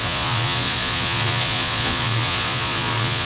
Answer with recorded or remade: remade